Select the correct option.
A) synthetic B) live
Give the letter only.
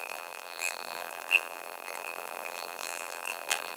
A